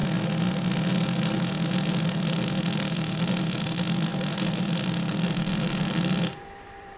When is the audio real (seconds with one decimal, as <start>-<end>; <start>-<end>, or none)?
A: 0.0-2.0; 4.1-4.6